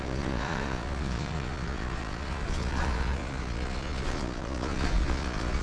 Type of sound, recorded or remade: remade